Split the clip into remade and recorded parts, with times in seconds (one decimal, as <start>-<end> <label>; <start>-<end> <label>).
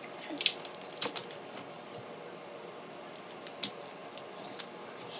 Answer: 0.0-5.2 recorded